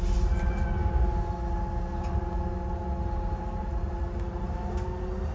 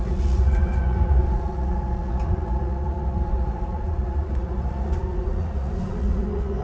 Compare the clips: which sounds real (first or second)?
first